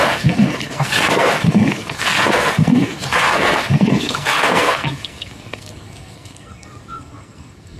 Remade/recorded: remade